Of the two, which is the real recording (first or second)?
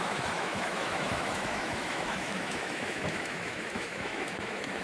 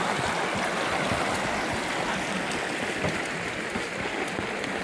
second